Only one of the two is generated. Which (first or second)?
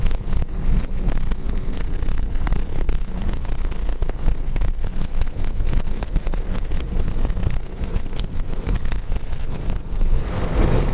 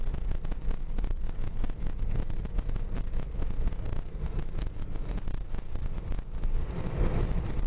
first